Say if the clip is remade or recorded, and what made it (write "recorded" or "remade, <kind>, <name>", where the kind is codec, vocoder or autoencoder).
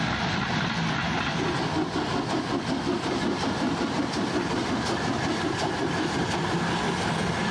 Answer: recorded